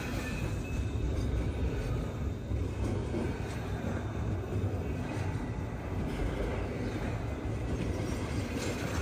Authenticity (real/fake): real